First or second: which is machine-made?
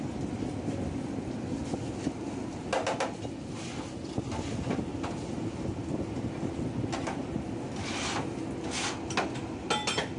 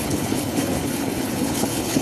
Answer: second